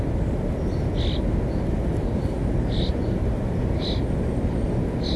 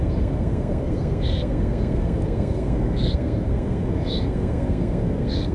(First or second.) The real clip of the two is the first